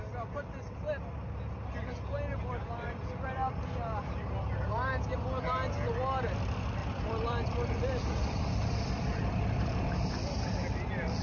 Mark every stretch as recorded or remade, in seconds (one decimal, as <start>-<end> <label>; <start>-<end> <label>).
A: 0.0-6.8 recorded; 6.8-10.3 remade; 10.3-11.2 recorded